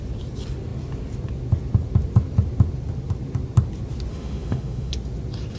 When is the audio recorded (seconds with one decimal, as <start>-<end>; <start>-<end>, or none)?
0.0-4.1; 4.9-5.6